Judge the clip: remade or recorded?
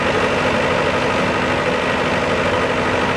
recorded